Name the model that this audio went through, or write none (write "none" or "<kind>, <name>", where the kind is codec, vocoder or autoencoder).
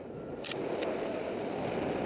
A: none